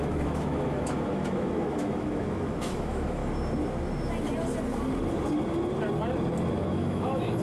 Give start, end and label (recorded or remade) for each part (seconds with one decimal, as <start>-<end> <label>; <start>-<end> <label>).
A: 0.0-3.2 remade; 3.2-6.5 recorded; 6.5-7.4 remade